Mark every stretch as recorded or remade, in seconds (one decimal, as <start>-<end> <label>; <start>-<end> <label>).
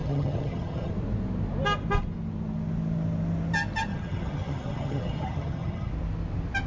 0.0-0.9 remade; 0.9-3.9 recorded; 3.9-5.9 remade; 5.9-6.7 recorded